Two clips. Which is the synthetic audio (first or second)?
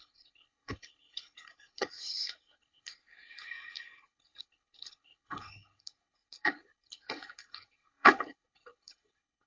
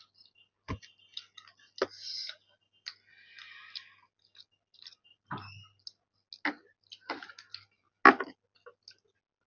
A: first